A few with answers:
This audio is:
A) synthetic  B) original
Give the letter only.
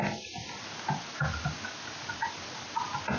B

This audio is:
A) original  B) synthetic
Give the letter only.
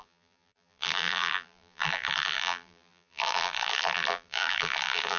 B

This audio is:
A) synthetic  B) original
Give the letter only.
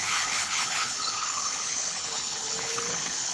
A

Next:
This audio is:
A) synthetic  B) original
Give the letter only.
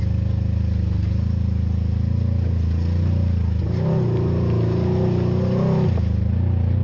B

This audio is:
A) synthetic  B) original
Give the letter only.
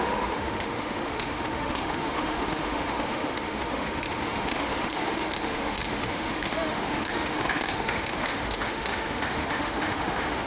A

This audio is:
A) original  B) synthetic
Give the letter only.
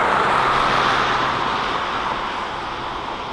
A